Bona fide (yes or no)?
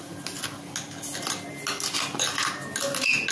yes